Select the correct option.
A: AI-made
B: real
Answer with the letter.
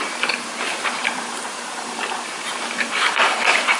A